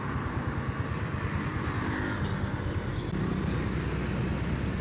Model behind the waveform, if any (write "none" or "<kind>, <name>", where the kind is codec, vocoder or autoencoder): none